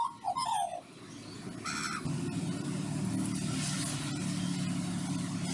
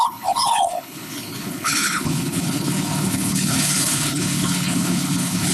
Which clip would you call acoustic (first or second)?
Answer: first